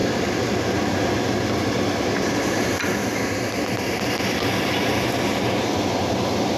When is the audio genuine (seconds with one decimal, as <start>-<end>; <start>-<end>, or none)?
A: 0.0-6.6